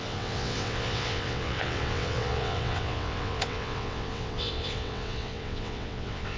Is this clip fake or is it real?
fake